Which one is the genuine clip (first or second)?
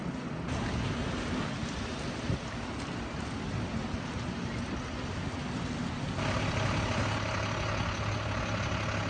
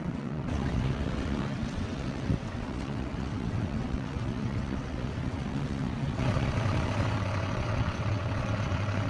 first